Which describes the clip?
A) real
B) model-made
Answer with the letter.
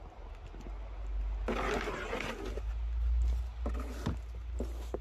A